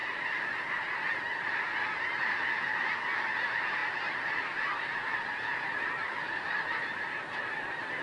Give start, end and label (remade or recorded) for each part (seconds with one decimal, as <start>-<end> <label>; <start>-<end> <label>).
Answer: 0.0-2.0 recorded; 2.0-8.0 remade